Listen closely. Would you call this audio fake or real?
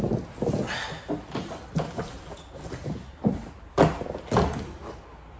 real